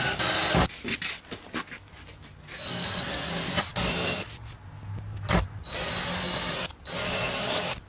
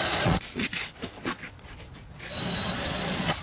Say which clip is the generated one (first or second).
second